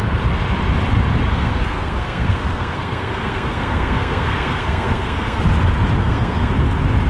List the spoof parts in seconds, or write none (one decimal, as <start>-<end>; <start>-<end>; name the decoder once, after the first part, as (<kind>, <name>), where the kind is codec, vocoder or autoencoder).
1.3-5.4 (codec, SNAC); 6.0-6.5